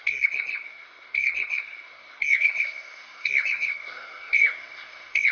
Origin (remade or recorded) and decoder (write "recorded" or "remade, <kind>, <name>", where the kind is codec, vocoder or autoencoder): remade, codec, SNAC